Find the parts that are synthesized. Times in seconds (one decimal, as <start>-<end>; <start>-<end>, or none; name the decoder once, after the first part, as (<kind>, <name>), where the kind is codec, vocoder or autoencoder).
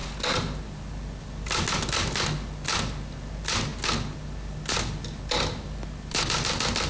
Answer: none